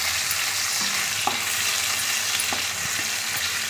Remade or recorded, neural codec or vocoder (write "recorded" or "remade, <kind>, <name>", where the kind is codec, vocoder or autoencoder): recorded